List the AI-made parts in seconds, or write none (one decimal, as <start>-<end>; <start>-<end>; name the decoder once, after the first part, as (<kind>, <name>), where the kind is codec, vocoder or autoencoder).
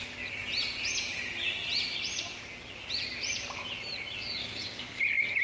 4.4-5.0 (codec, DAC)